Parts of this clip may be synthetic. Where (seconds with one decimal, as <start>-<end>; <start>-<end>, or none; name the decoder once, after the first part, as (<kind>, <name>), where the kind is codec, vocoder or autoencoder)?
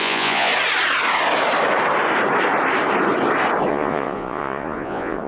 0.0-0.5 (vocoder, Vocos); 3.7-5.3